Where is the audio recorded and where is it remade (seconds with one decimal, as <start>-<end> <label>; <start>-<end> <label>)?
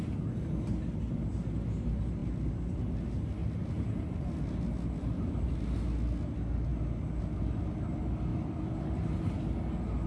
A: 0.0-8.3 recorded; 8.3-9.3 remade; 9.3-10.1 recorded